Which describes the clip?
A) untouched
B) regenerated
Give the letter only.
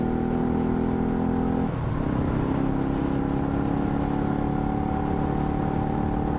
A